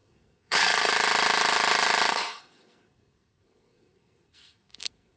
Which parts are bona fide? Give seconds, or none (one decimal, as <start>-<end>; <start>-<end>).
0.9-2.1